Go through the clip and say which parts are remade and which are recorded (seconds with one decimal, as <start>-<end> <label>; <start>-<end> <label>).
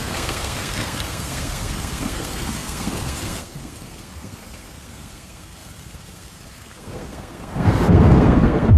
0.0-8.8 remade